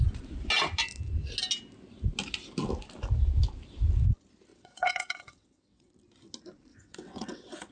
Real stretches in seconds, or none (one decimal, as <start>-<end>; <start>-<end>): 0.0-4.5; 5.9-6.7